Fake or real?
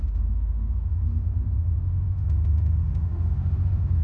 fake